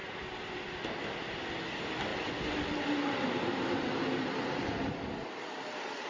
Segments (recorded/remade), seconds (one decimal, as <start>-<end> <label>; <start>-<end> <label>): 0.0-6.1 recorded